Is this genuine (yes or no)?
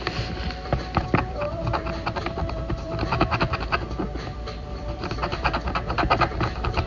no